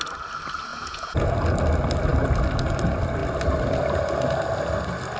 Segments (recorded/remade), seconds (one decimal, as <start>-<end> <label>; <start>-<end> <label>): 0.0-0.7 recorded; 0.7-1.3 remade; 1.3-5.2 recorded